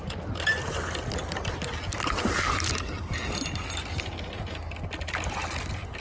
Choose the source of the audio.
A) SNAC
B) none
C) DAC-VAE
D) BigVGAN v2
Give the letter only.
B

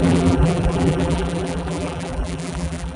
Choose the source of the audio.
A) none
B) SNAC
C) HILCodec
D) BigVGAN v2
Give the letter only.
D